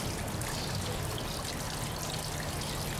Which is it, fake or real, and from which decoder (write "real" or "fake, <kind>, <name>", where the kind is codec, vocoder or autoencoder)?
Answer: real